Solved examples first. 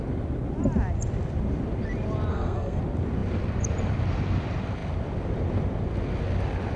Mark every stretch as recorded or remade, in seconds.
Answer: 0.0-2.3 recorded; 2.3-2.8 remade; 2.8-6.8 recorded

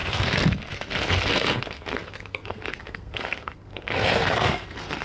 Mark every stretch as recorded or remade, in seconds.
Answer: 0.0-5.0 remade

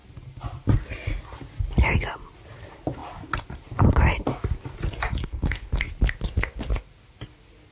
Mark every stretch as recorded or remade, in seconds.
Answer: 0.0-5.2 recorded; 5.2-5.9 remade; 5.9-7.7 recorded

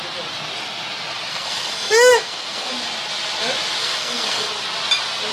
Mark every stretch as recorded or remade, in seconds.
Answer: 0.0-1.3 recorded; 1.3-2.7 remade; 2.7-3.8 recorded; 3.8-4.5 remade; 4.5-5.3 recorded